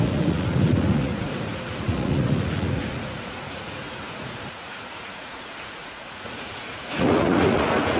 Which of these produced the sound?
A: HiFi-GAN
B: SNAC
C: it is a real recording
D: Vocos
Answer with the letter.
D